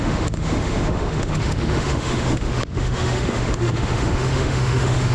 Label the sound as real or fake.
fake